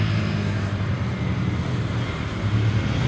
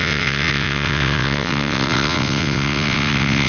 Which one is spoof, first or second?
second